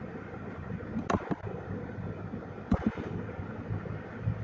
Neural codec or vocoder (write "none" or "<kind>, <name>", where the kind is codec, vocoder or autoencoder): none